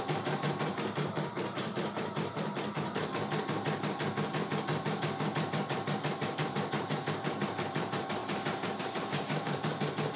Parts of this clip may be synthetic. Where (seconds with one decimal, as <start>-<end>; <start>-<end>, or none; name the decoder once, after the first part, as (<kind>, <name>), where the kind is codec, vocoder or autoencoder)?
0.0-3.1 (vocoder, BigVGAN v2); 5.3-8.2; 8.8-10.2